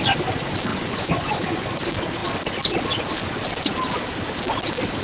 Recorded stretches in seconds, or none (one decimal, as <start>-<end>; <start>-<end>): 0.0-0.7; 1.8-5.0